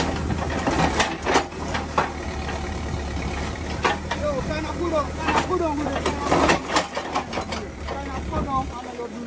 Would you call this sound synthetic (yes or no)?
no